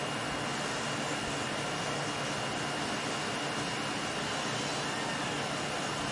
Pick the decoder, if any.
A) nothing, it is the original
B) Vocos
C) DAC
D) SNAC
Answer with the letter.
A